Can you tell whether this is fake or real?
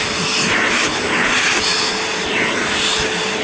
real